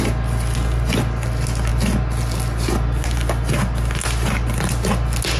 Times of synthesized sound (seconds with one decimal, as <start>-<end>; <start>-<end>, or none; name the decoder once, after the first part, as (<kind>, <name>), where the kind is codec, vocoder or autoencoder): none